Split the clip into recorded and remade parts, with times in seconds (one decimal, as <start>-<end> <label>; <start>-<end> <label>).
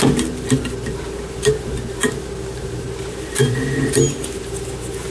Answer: 0.0-5.1 recorded